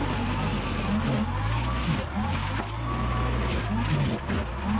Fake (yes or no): no